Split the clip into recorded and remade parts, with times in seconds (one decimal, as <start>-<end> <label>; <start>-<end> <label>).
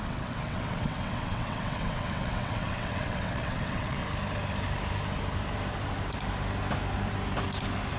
0.0-4.0 remade; 4.0-8.0 recorded